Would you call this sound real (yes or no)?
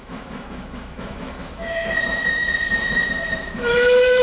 no